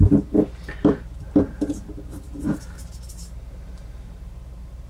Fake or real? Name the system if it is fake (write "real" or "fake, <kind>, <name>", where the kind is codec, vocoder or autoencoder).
fake, vocoder, BigVGAN v2